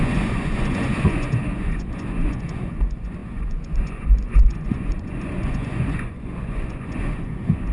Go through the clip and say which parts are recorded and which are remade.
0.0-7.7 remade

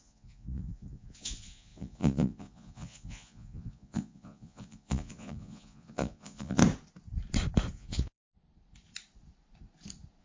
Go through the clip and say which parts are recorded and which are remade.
0.0-6.6 remade; 6.6-7.7 recorded; 7.7-8.3 remade; 8.3-10.2 recorded

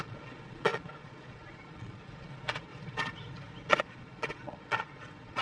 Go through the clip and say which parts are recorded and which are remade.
0.0-2.7 remade; 2.7-3.7 recorded; 3.7-5.4 remade

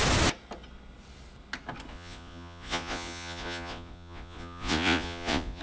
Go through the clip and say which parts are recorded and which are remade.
0.0-1.9 recorded; 1.9-5.6 remade

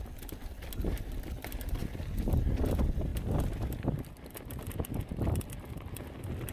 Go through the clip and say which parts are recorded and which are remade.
0.0-6.5 recorded

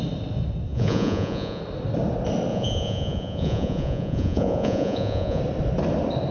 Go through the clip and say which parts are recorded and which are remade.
0.0-0.7 recorded; 0.7-1.6 remade; 1.6-2.5 recorded; 2.5-5.4 remade; 5.4-6.3 recorded